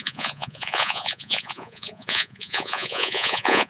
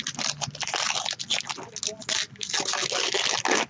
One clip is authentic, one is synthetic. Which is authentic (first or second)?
second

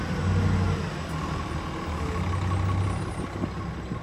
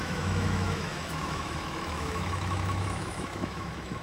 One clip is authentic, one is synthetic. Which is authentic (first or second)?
first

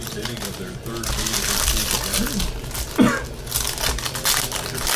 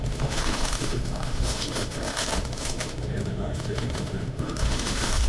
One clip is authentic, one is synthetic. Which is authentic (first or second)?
first